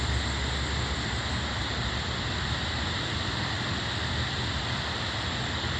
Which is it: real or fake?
real